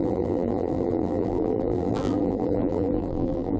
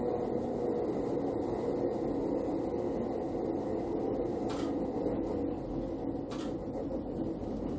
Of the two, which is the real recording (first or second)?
second